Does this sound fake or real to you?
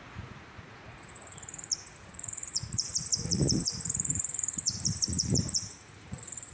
fake